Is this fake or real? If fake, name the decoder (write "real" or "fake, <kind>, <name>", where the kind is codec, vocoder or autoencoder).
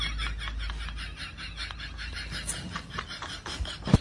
real